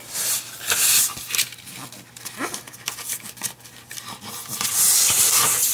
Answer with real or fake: real